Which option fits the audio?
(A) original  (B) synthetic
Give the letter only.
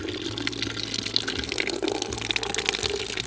A